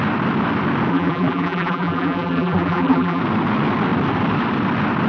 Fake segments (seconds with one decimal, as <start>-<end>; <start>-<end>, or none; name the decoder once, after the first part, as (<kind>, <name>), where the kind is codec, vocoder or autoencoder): 0.9-3.2 (vocoder, BigVGAN v2)